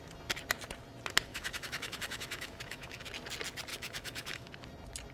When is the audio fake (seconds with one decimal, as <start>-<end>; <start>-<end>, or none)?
1.3-3.1; 3.7-4.5